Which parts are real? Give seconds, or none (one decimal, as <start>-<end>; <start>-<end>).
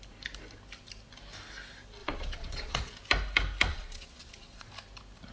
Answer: 0.0-2.0; 2.9-3.7; 4.7-5.3